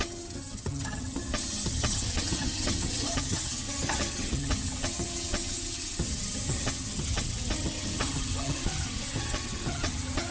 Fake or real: fake